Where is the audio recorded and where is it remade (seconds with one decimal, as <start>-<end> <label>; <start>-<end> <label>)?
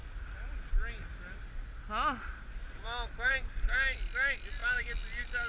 0.0-5.5 recorded